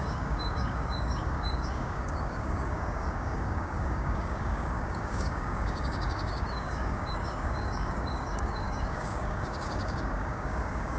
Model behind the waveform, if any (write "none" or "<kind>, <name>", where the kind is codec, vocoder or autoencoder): codec, DAC